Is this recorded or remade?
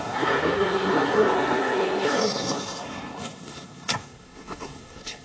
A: remade